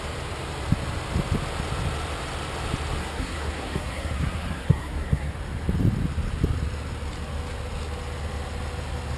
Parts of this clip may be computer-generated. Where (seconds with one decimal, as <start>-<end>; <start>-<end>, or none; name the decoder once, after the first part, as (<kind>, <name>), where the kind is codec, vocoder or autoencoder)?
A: 3.0-5.3 (codec, SNAC)